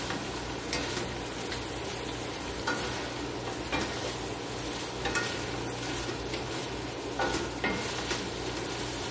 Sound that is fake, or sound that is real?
real